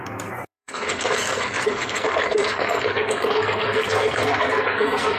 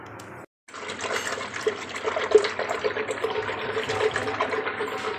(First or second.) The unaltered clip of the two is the second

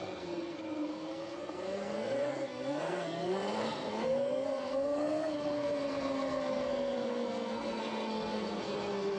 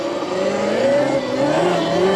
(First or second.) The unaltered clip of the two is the second